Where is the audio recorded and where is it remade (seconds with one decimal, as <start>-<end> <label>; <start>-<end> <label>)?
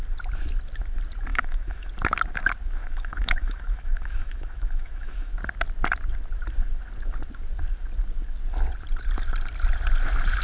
0.0-1.3 recorded; 1.3-1.9 remade; 1.9-2.8 recorded; 2.8-5.3 remade; 5.3-10.4 recorded